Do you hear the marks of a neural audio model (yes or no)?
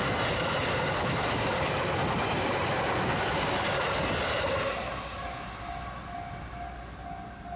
no